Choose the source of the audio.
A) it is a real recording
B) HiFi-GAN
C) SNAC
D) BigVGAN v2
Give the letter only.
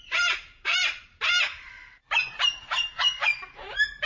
D